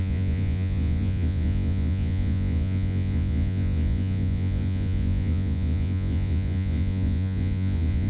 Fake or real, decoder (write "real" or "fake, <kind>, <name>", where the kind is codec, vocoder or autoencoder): fake, vocoder, Vocos